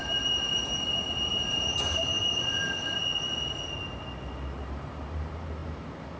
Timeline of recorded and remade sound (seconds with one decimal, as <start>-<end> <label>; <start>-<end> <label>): 0.0-3.0 remade; 3.0-4.6 recorded; 4.6-6.2 remade